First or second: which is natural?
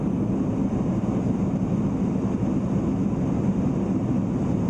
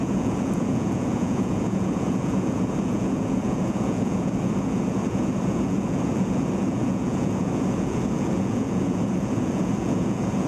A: first